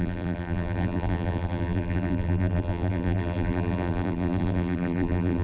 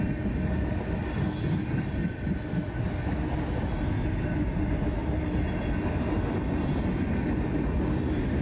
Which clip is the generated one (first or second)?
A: first